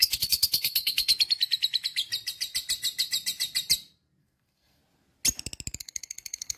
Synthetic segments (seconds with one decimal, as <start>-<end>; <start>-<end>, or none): 0.0-1.1; 4.2-4.8; 5.8-6.6